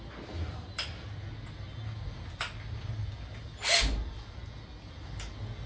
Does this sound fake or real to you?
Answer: real